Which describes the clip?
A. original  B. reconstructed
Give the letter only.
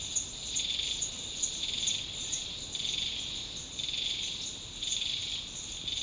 A